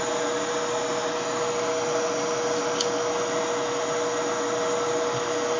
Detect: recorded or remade recorded